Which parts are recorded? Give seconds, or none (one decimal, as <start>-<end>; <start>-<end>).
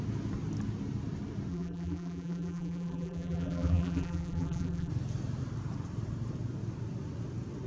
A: 0.0-1.5; 4.9-7.7